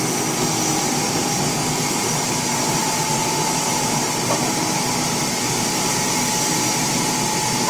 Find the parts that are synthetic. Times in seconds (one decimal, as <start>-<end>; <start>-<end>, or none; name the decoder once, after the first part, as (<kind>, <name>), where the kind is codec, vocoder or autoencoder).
none